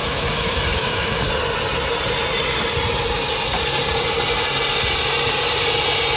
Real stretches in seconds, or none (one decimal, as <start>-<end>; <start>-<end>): 1.3-6.2